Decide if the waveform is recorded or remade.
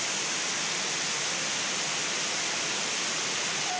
recorded